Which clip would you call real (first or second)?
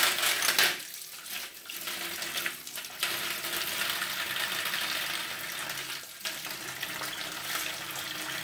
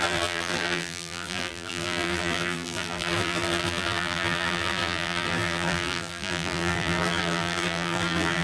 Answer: first